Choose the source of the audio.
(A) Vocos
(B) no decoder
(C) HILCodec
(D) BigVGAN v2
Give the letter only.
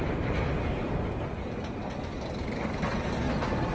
B